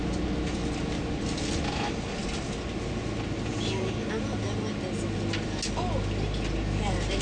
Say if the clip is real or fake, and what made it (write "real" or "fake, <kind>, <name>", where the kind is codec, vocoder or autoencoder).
real